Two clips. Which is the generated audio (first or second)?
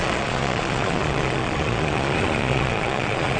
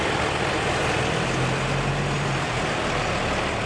first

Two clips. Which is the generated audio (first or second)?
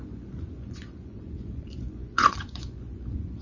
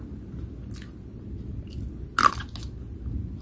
first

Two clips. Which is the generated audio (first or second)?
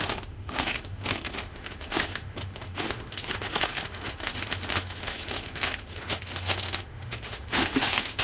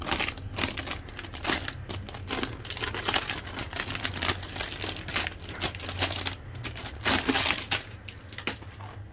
first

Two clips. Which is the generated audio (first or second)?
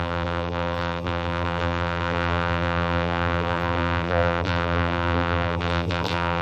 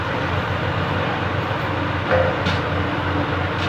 first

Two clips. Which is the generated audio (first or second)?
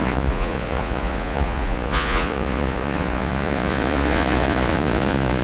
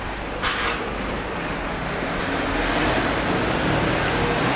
first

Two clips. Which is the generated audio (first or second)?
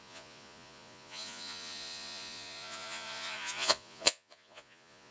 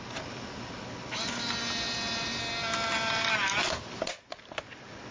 first